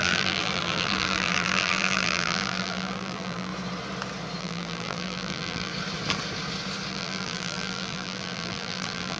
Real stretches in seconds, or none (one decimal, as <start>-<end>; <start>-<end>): 3.5-4.4; 5.7-6.9